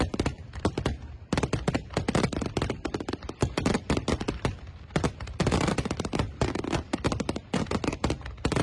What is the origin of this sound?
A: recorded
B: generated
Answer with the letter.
B